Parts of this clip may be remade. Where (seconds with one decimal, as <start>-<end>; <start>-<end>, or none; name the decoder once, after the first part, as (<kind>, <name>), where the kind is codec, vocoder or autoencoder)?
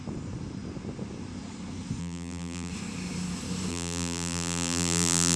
2.0-2.7 (vocoder, BigVGAN v2); 3.7-5.4